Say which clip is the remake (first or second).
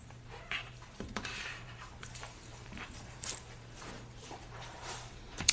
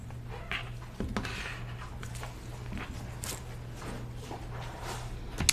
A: first